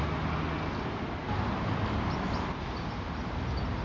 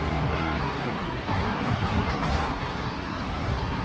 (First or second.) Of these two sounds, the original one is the first